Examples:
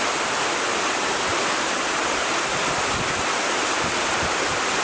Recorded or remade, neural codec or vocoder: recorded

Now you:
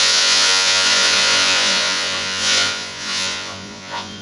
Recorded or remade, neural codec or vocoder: remade, vocoder, Vocos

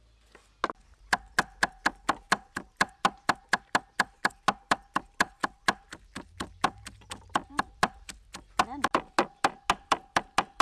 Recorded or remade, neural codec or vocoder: recorded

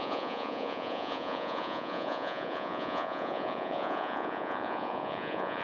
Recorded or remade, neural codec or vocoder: remade, vocoder, Vocos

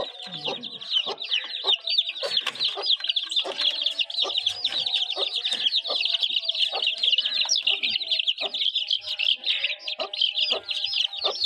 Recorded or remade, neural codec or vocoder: recorded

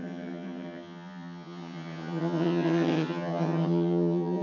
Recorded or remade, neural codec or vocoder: remade, vocoder, HiFi-GAN